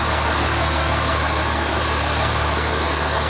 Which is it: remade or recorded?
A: remade